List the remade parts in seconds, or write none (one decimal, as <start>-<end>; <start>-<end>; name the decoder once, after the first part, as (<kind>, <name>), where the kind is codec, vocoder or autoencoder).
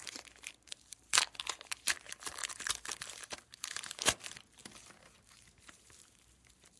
0.0-2.4 (vocoder, BigVGAN v2); 3.2-6.8